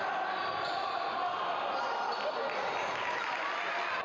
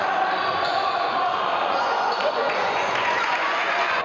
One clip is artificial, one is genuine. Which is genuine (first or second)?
first